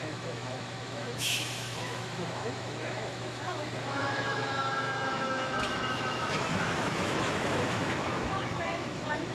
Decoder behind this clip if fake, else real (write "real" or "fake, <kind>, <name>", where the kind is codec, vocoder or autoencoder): fake, autoencoder, DAC-VAE